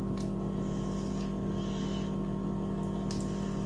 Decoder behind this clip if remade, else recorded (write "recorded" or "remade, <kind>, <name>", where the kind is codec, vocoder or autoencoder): recorded